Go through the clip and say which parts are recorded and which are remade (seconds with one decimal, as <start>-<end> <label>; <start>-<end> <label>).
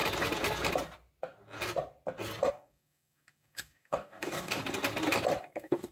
0.0-2.5 recorded; 2.5-4.6 remade; 4.6-5.4 recorded; 5.4-5.9 remade